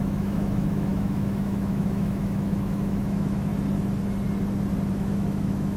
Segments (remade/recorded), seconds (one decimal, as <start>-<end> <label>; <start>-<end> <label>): 0.0-3.5 remade; 3.5-4.9 recorded; 4.9-5.8 remade